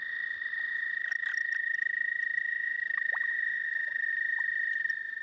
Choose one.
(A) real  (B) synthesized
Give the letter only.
A